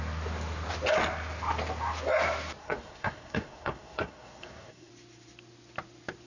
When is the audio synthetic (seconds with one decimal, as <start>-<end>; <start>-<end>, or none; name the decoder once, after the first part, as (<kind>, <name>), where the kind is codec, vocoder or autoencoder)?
2.6-4.9 (codec, SNAC)

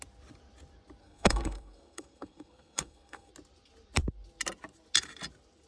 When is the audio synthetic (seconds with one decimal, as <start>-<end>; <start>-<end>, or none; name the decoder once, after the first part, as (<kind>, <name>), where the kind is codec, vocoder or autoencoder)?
1.0-3.3 (codec, SNAC)

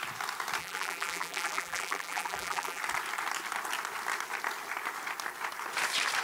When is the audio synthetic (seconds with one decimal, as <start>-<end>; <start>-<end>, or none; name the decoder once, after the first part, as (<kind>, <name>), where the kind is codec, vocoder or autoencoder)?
0.6-2.8 (vocoder, BigVGAN v2)

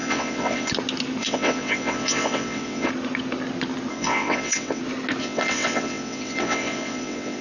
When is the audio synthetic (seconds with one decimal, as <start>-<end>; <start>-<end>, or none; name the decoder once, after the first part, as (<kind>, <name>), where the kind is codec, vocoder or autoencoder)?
0.0-0.7 (vocoder, WaveNeXt); 1.2-2.9; 3.9-4.8; 5.2-7.4

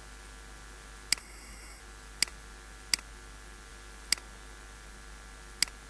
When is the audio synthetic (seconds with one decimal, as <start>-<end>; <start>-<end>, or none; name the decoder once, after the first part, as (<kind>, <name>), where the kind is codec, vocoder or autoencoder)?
1.2-1.8 (codec, SNAC)

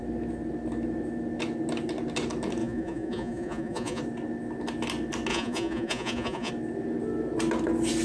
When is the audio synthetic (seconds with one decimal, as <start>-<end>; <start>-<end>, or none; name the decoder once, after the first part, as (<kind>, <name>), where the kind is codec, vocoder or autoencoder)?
2.6-4.0 (vocoder, Vocos); 5.3-6.5